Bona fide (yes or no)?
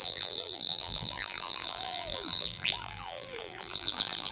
no